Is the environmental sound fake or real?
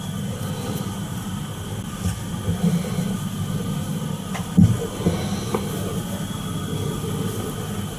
real